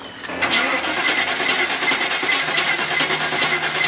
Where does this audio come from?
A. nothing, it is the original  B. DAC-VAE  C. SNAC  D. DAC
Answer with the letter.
A